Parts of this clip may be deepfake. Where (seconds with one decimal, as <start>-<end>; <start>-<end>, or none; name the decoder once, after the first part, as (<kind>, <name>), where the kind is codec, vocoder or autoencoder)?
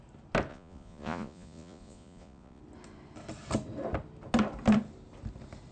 0.5-2.6 (vocoder, Vocos)